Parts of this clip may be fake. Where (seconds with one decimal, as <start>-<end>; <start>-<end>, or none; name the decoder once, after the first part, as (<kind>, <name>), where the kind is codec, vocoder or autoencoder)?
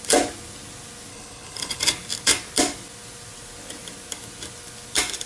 1.1-1.8 (codec, HILCodec)